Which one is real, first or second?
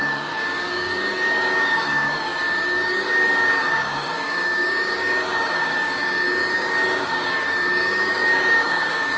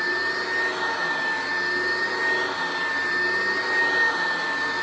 second